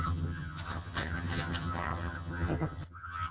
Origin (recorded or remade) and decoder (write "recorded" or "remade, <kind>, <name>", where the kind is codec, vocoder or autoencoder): remade, vocoder, HiFi-GAN